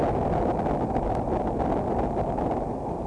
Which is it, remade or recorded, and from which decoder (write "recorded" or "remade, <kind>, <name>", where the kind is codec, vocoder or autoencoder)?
recorded